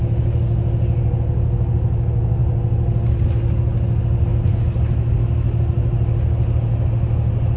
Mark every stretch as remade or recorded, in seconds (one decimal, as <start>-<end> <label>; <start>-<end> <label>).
0.0-7.6 recorded